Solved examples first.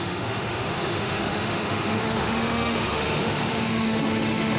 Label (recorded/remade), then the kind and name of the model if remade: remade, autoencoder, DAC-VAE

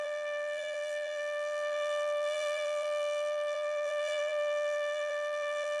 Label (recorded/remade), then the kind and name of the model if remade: remade, vocoder, BigVGAN v2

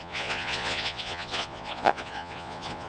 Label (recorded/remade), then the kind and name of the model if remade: remade, vocoder, Vocos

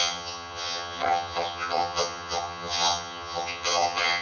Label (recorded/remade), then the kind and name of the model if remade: remade, vocoder, HiFi-GAN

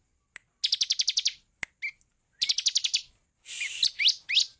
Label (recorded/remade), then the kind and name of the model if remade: recorded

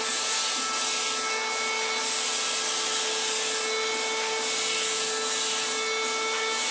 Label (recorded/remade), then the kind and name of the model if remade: recorded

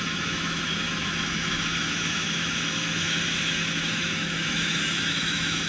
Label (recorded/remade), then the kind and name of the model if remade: remade, autoencoder, DAC-VAE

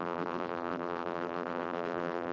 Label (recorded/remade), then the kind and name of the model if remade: remade, vocoder, BigVGAN v2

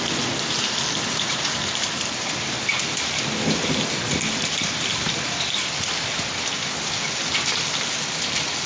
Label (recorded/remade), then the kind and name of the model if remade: recorded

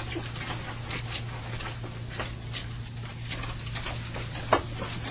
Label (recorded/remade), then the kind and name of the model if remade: recorded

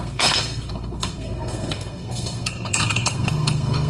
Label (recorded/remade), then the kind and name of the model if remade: remade, codec, SNAC